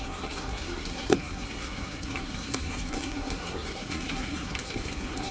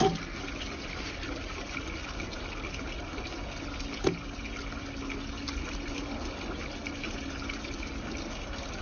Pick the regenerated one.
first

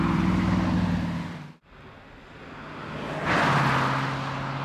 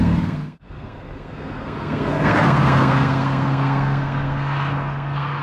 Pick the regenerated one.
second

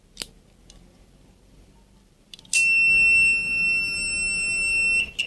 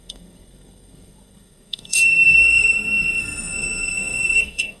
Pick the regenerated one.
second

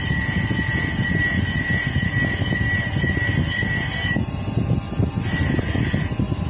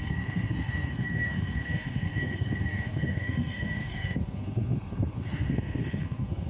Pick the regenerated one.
second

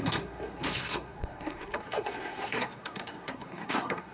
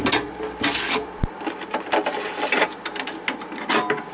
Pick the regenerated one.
first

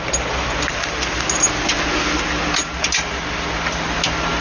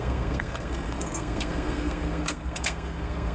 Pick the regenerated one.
second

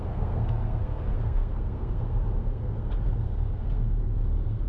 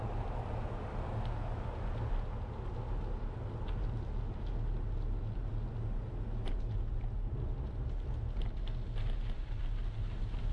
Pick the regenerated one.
first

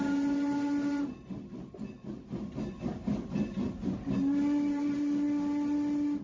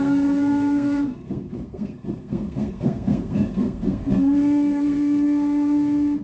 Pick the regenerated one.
second